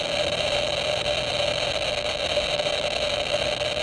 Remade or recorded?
recorded